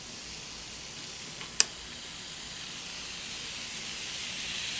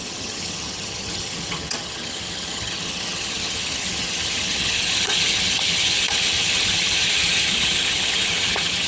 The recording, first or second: first